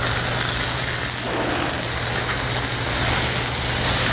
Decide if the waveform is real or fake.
real